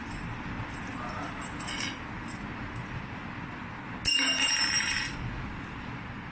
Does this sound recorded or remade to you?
recorded